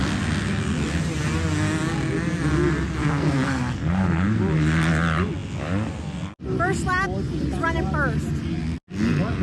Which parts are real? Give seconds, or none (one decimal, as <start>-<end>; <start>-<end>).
0.0-3.0; 4.4-9.4